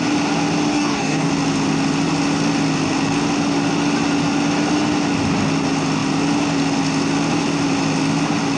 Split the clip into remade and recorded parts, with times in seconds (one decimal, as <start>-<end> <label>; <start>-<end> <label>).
0.0-0.7 recorded; 0.7-1.3 remade; 1.3-8.6 recorded